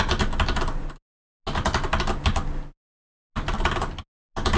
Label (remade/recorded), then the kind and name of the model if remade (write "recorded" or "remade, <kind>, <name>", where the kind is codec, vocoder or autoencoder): recorded